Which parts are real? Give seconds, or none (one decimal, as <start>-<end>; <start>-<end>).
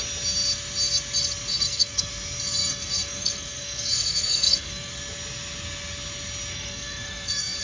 0.0-1.5; 2.1-2.6; 4.9-6.5